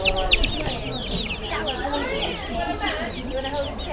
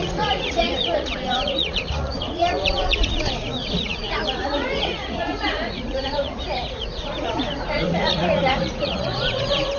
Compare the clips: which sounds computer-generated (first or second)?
second